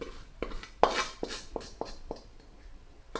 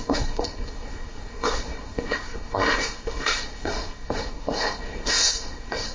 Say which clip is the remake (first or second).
second